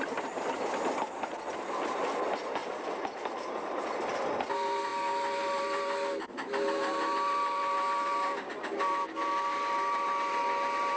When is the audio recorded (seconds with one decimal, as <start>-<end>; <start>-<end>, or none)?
0.0-11.0

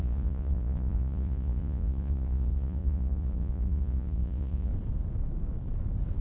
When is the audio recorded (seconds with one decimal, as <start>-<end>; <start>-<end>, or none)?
4.7-6.2

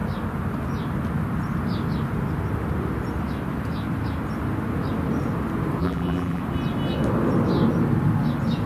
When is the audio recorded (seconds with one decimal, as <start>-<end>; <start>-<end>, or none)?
0.0-5.8; 6.4-8.7

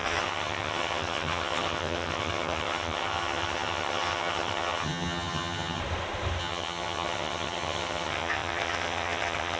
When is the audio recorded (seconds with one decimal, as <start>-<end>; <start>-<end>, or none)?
5.8-6.4

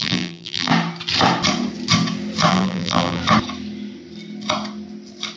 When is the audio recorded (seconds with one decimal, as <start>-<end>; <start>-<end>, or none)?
0.7-2.5; 3.2-5.4

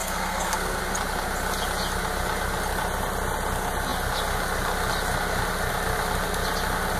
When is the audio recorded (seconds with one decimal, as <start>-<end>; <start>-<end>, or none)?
0.8-7.0